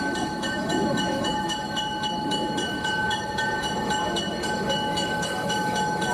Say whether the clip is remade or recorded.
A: remade